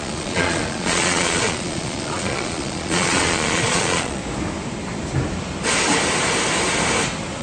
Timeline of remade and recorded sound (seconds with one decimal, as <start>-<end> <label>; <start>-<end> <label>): 0.0-4.2 remade; 4.2-7.4 recorded